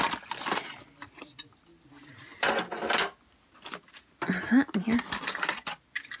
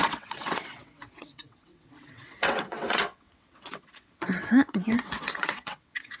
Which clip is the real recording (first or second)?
first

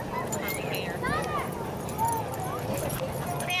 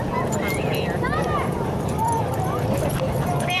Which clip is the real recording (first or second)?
first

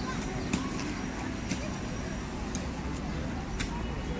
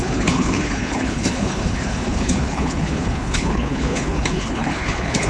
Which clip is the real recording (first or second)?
first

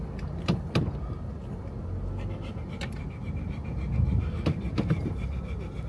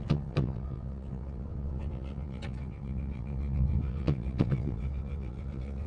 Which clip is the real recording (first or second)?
first